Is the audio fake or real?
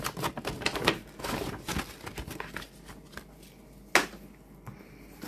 real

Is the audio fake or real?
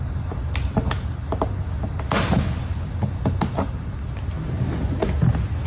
real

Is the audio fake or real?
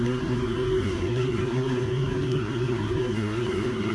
fake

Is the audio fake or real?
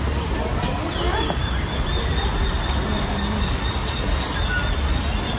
real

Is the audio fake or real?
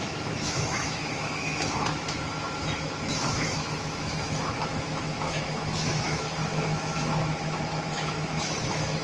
fake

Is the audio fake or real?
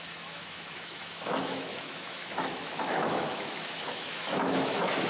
fake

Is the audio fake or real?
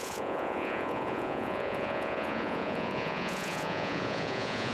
fake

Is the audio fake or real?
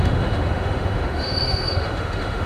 fake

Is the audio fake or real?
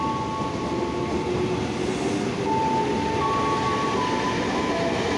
real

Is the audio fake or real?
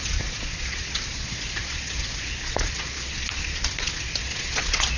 fake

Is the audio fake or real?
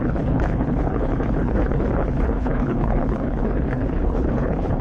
fake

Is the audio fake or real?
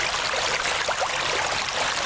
real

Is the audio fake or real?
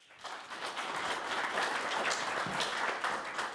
real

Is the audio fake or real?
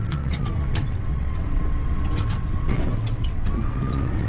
fake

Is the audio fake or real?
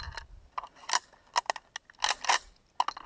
real